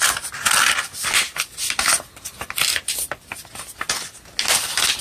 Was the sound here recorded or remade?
recorded